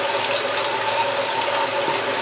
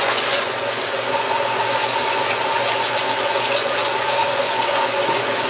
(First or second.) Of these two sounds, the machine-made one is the second